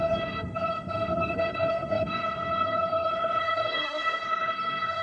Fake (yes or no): yes